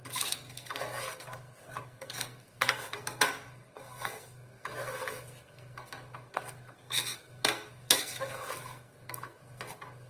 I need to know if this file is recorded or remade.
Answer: remade